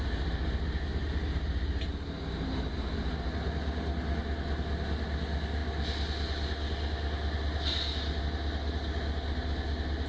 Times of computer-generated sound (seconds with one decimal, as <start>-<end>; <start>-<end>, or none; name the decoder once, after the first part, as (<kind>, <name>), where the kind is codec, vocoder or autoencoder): none